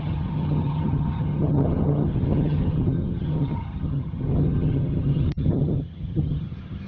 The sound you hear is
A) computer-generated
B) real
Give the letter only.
A